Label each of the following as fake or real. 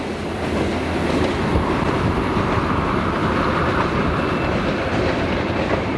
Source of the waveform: real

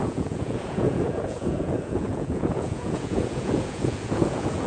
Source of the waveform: fake